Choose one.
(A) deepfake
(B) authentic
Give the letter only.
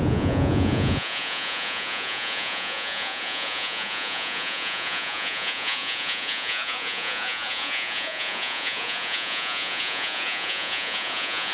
A